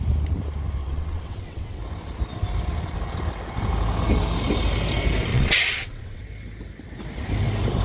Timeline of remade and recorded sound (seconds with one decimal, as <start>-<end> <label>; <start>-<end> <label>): 0.0-0.8 recorded; 0.8-1.8 remade; 1.8-5.3 recorded; 5.3-6.2 remade; 6.2-7.8 recorded